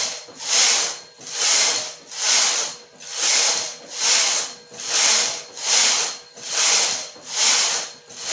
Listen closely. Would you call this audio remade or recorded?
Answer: recorded